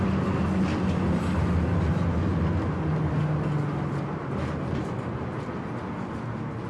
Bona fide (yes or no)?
yes